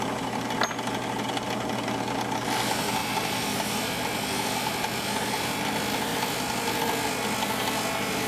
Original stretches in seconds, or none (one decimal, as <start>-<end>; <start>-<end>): 0.0-3.0; 5.0-6.1; 6.8-8.3